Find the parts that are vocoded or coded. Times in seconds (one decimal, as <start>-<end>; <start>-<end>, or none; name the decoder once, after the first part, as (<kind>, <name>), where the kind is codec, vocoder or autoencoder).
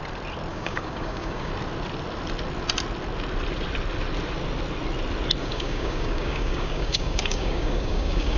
0.5-1.5 (codec, DAC); 5.4-8.4